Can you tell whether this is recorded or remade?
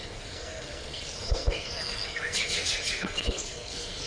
remade